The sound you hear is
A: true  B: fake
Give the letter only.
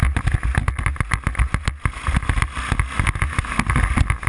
A